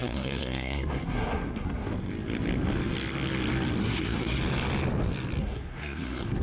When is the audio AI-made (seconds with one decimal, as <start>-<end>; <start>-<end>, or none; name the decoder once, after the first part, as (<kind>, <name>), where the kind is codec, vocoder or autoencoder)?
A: 0.0-1.9 (codec, SNAC); 3.8-4.4; 5.4-6.4